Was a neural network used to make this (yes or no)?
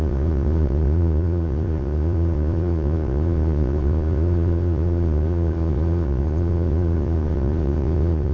yes